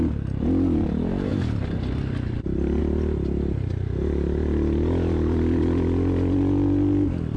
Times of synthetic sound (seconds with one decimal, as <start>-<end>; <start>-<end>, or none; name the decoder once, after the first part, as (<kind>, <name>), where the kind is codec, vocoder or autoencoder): none